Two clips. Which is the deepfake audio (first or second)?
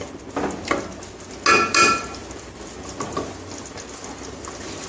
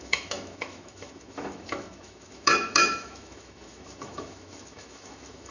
second